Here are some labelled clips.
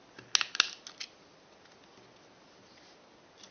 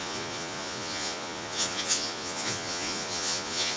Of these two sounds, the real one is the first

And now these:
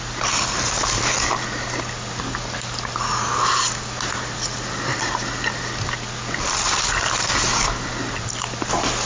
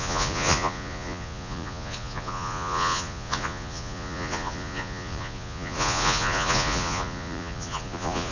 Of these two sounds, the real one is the first